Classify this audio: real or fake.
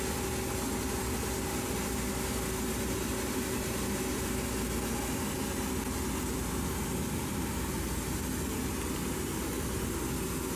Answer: real